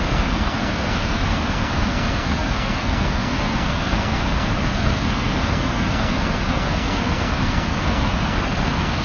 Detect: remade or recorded remade